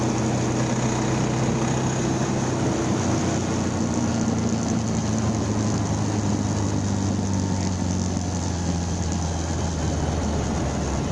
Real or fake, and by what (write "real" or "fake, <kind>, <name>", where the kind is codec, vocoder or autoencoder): real